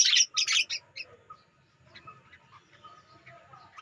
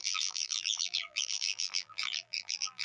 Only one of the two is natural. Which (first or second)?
first